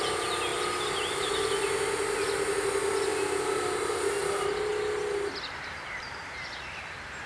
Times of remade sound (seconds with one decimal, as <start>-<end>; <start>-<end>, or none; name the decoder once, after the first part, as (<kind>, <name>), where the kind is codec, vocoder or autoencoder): none